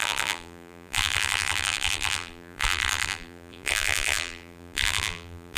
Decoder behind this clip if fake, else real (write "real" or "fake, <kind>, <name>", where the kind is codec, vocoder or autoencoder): fake, vocoder, BigVGAN v2